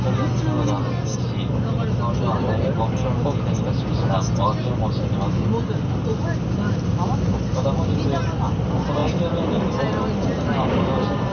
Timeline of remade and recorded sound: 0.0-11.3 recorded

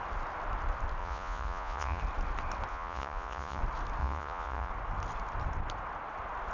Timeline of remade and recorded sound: 0.0-1.0 recorded; 1.0-2.0 remade; 2.0-2.7 recorded; 2.7-3.6 remade; 3.6-4.0 recorded; 4.0-4.7 remade; 4.7-6.5 recorded

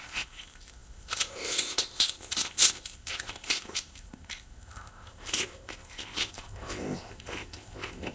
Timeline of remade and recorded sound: 0.0-8.1 remade

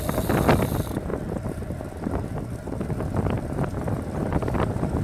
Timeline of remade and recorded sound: 0.0-5.0 recorded

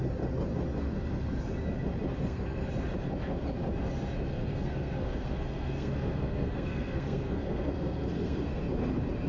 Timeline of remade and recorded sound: 0.0-2.2 recorded; 2.2-2.7 remade; 2.7-4.3 recorded; 4.3-8.6 remade; 8.6-9.3 recorded